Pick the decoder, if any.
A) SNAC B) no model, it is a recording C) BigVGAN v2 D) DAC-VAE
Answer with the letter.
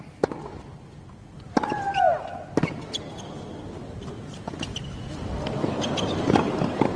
B